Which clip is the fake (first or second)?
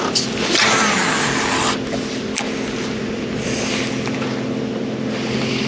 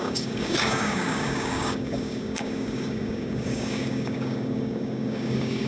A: second